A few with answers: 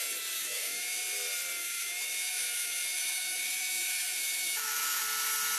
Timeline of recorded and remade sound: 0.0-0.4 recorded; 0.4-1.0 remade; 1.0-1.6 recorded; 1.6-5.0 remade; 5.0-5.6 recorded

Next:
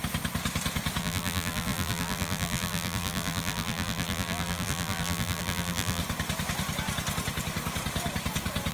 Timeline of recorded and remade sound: 0.0-1.0 recorded; 1.0-6.0 remade; 6.0-8.7 recorded

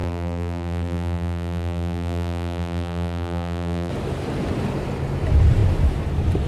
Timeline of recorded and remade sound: 0.0-3.9 remade; 3.9-6.5 recorded

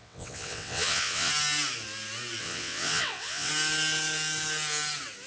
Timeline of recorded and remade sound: 0.0-1.3 remade; 1.3-2.4 recorded; 2.4-3.5 remade; 3.5-5.3 recorded

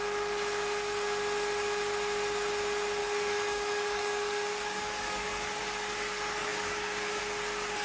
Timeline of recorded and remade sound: 0.0-3.0 recorded; 3.0-5.6 remade; 5.6-6.4 recorded; 6.4-7.2 remade; 7.2-7.8 recorded

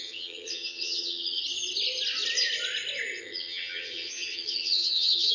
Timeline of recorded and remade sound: 0.0-1.4 remade; 1.4-3.2 recorded; 3.2-5.3 remade

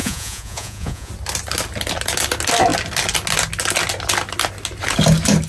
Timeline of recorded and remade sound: 0.0-1.1 remade; 1.1-5.5 recorded